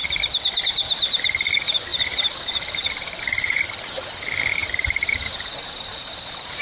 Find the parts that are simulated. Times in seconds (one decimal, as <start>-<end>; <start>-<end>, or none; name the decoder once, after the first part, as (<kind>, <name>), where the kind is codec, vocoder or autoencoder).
1.9-3.7 (vocoder, BigVGAN v2); 4.6-6.6